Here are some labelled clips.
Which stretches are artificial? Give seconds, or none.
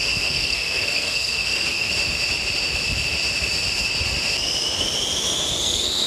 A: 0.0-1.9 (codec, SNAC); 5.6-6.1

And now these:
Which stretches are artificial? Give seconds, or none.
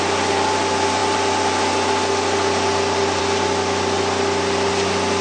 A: none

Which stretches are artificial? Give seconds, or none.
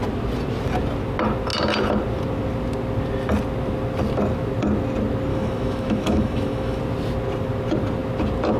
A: 5.3-6.8 (autoencoder, DAC-VAE)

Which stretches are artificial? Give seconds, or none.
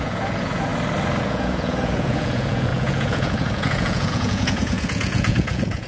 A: 0.0-0.7 (vocoder, Vocos); 1.2-5.9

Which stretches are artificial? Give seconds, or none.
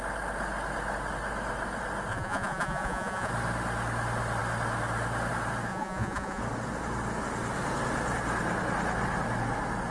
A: 2.1-3.3 (vocoder, Vocos); 5.7-6.4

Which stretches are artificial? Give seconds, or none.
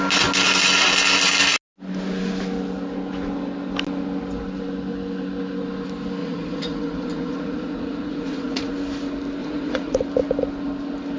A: 6.2-8.7 (vocoder, Vocos); 9.4-10.0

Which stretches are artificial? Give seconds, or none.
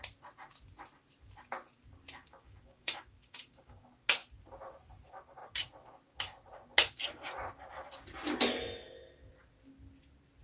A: 2.2-3.8 (codec, DAC)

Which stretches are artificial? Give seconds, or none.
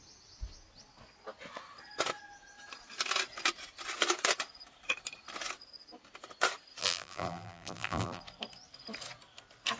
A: 6.8-8.2 (vocoder, BigVGAN v2)